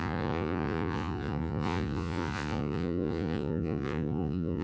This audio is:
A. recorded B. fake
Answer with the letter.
B